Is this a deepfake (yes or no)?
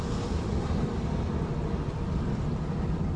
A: no